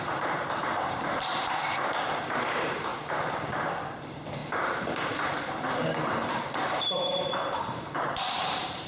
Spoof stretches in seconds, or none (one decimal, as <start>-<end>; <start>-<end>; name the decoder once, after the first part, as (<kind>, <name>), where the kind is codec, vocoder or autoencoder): 0.0-2.9 (vocoder, BigVGAN v2); 4.0-8.9